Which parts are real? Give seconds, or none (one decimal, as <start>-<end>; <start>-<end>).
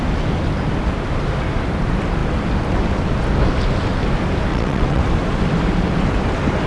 0.0-4.5; 5.0-6.7